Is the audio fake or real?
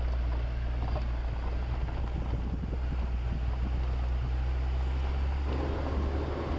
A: real